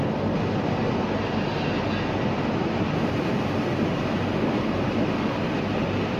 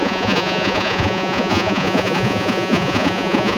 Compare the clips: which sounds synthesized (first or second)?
second